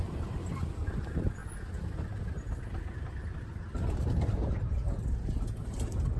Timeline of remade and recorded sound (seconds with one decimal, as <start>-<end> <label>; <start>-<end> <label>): 0.0-1.4 remade; 1.4-2.8 recorded; 2.8-6.2 remade

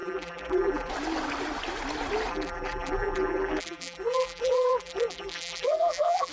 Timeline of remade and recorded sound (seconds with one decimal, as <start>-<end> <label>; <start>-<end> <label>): 0.0-0.9 remade; 0.9-2.3 recorded; 2.3-6.3 remade

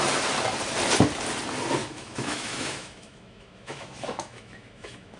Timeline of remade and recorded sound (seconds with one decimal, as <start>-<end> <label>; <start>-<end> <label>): 0.0-1.8 recorded; 1.8-5.2 remade

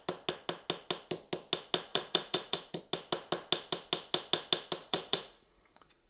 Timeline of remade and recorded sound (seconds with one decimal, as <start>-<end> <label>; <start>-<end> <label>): 0.0-1.9 recorded; 1.9-2.8 remade; 2.8-4.8 recorded; 4.8-6.1 remade